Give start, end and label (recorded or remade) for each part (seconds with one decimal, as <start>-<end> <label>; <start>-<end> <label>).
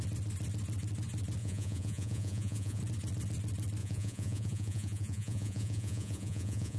0.0-1.4 recorded; 1.4-2.8 remade; 2.8-3.8 recorded; 3.8-6.8 remade